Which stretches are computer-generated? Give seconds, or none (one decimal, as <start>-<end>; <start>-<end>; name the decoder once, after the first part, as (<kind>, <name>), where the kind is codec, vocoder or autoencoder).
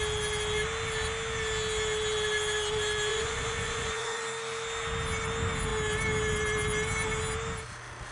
3.1-4.2 (vocoder, Vocos)